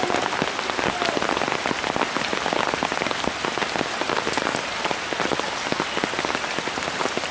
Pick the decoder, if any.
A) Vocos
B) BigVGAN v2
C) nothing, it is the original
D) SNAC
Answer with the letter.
C